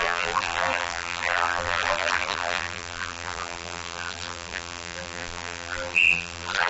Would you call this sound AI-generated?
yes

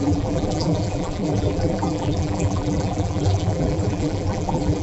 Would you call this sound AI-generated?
yes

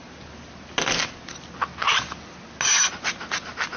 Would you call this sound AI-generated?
no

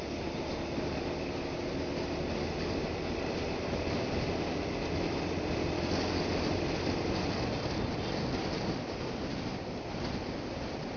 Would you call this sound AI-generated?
no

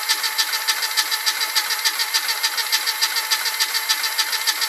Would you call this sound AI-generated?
no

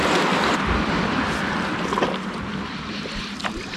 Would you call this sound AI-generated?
no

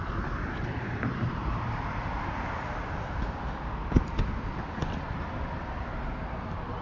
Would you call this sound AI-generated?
yes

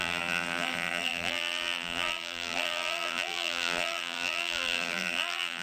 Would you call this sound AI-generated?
yes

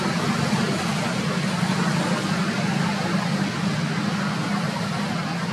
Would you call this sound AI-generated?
no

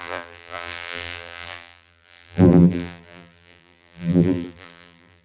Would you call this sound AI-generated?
yes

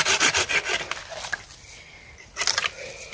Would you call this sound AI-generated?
no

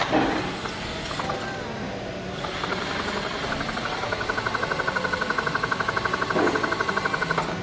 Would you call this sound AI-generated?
no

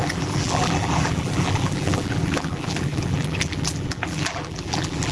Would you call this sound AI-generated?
yes